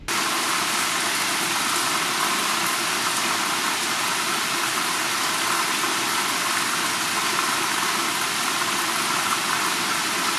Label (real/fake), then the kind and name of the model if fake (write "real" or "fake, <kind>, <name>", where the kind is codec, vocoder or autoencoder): real